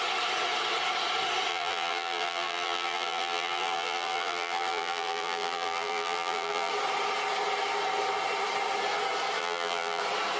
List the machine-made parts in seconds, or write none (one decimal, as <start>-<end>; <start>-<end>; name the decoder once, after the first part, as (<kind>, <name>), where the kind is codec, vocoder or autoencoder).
1.5-6.7 (vocoder, BigVGAN v2); 9.4-10.0